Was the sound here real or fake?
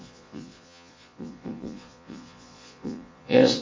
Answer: fake